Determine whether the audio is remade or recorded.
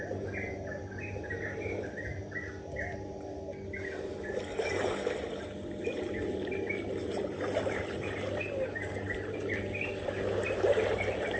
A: recorded